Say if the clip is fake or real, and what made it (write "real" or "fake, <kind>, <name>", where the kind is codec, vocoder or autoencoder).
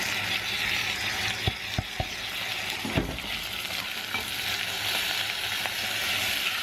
real